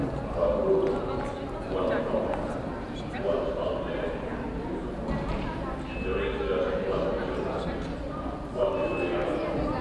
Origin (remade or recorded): recorded